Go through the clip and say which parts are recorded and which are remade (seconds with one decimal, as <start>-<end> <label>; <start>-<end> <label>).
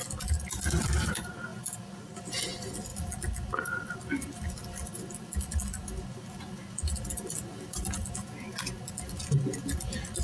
0.0-10.2 recorded